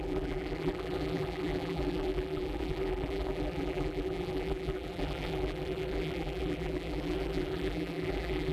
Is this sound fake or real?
fake